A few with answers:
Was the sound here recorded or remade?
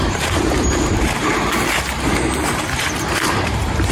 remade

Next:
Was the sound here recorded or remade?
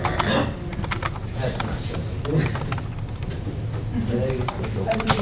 remade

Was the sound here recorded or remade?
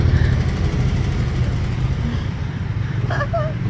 remade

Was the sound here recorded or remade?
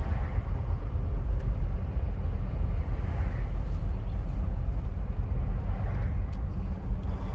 recorded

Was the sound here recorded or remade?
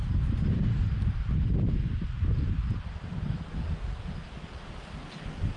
recorded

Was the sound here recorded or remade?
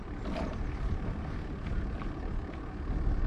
recorded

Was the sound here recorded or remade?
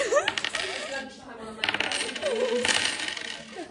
recorded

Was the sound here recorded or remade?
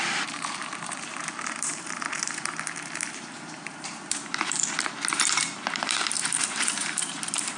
remade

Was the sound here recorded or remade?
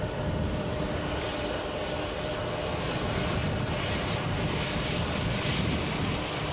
recorded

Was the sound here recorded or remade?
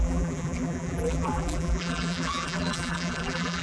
remade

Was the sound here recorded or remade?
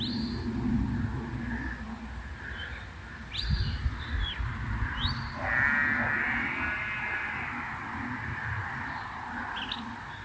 recorded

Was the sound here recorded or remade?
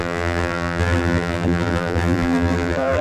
remade